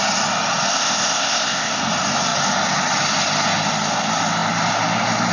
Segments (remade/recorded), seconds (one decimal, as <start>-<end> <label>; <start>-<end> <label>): 0.0-0.7 recorded; 0.7-1.8 remade; 1.8-5.3 recorded